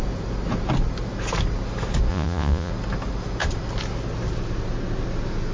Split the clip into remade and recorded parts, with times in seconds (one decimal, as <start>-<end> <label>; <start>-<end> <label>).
0.0-2.1 recorded; 2.1-2.7 remade; 2.7-5.5 recorded